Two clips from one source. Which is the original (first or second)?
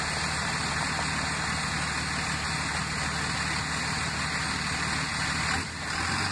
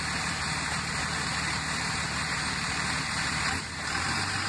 first